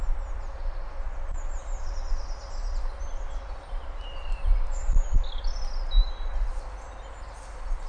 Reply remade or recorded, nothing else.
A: recorded